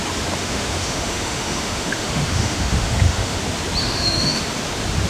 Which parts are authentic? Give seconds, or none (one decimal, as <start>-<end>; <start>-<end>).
0.0-0.4; 3.4-3.8; 4.4-5.1

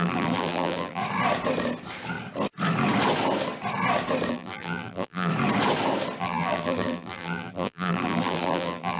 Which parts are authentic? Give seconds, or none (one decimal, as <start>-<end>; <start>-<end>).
1.0-4.3; 5.3-6.2

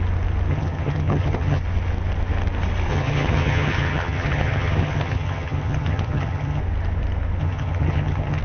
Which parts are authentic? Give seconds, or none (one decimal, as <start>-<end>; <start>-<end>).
0.0-0.5; 1.6-2.9; 6.6-7.4

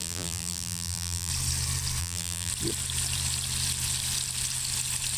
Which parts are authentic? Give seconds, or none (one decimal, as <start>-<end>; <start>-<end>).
1.3-2.0; 2.5-5.2

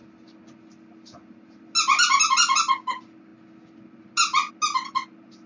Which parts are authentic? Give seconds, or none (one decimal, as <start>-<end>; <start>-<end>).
0.0-5.5

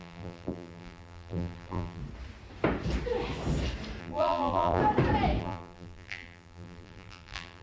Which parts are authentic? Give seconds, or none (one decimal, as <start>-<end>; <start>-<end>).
2.0-4.0; 4.8-5.4

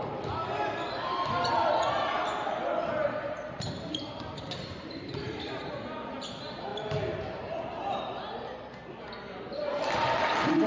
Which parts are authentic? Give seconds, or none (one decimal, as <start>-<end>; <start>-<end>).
0.0-2.9; 5.7-10.7

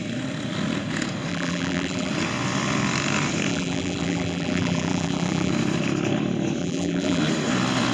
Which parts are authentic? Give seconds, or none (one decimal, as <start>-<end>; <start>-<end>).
0.0-1.3; 2.1-3.5; 5.5-6.6; 7.2-7.9